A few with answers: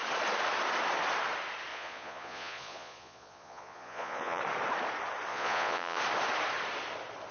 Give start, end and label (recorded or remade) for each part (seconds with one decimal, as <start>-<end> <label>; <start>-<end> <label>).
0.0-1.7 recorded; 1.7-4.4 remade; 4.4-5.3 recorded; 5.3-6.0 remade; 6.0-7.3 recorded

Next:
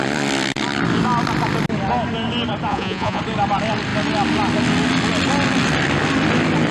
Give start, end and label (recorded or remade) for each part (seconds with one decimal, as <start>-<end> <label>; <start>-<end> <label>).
0.0-2.7 recorded; 2.7-3.2 remade; 3.2-6.7 recorded

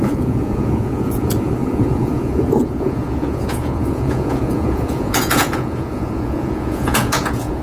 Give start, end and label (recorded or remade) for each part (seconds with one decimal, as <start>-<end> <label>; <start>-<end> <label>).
0.0-7.6 remade

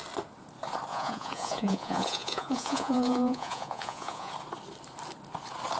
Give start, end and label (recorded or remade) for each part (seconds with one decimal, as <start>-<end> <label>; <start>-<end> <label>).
0.0-0.9 recorded; 0.9-4.3 remade; 4.3-5.8 recorded

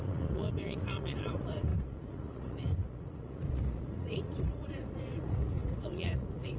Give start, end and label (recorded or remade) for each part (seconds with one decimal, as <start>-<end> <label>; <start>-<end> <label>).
0.0-6.6 remade

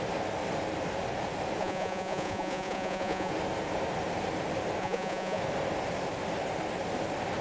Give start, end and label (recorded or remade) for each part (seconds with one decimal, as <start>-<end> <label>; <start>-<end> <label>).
0.0-1.6 recorded; 1.6-3.3 remade; 3.3-4.8 recorded; 4.8-5.4 remade; 5.4-7.4 recorded